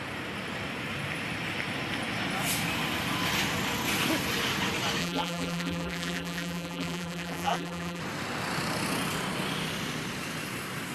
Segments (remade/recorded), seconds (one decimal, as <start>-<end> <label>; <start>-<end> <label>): 0.0-5.0 recorded; 5.0-8.0 remade; 8.0-10.9 recorded